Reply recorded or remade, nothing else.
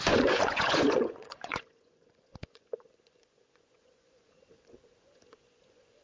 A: remade